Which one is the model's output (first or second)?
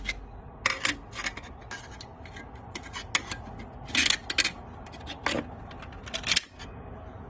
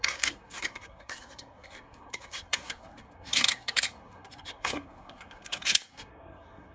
second